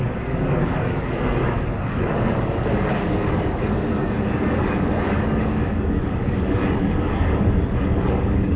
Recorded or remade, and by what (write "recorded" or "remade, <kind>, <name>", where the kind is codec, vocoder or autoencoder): remade, codec, DAC